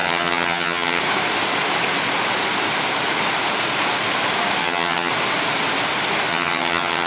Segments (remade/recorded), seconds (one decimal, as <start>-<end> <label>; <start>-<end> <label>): 0.0-1.0 remade; 1.0-4.6 recorded; 4.6-5.1 remade; 5.1-6.3 recorded; 6.3-7.1 remade